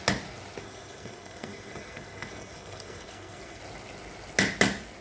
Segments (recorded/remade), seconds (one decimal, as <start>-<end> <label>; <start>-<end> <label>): 0.0-0.6 recorded; 0.6-3.6 remade; 3.6-5.0 recorded